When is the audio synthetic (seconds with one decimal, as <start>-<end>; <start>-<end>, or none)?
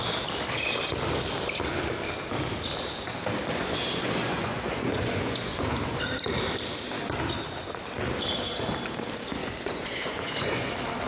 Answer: 3.5-5.6; 9.4-10.7